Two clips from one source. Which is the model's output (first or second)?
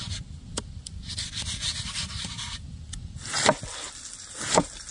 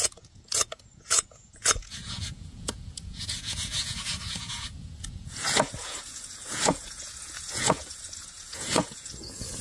second